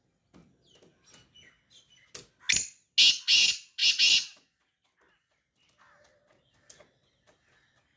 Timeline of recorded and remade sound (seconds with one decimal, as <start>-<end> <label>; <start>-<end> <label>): 0.0-8.0 recorded